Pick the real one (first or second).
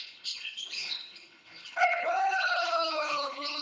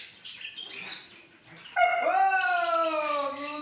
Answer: second